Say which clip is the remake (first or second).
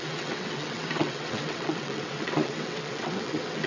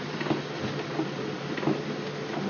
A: first